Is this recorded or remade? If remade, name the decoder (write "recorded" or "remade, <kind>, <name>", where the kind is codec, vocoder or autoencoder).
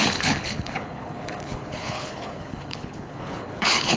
remade, codec, HILCodec